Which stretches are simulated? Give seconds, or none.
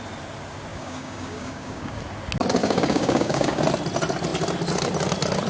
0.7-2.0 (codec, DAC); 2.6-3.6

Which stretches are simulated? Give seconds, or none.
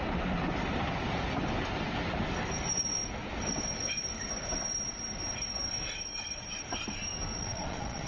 7.3-8.1 (vocoder, Vocos)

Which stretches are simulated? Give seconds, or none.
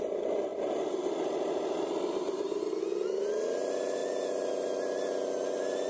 none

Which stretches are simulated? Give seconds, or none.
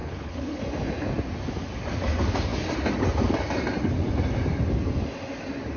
0.0-0.6 (codec, HILCodec)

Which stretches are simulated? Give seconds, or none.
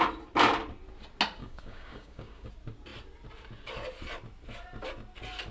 1.4-2.5 (codec, DAC)